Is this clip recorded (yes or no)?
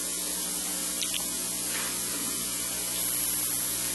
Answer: yes